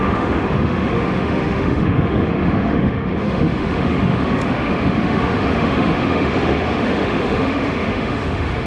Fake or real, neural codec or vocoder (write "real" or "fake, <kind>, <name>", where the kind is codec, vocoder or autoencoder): fake, autoencoder, DAC-VAE